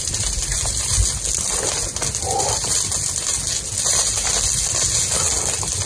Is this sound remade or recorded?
recorded